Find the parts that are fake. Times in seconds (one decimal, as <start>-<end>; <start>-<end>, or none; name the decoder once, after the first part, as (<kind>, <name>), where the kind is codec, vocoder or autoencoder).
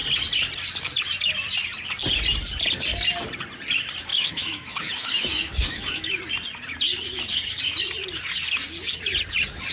4.1-6.2 (autoencoder, DAC-VAE)